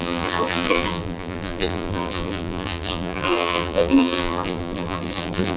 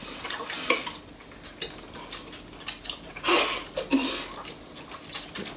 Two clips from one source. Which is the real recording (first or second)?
second